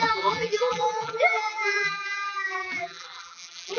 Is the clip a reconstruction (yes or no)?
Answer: yes